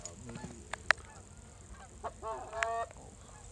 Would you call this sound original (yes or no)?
yes